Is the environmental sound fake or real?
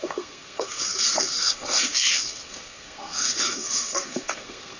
fake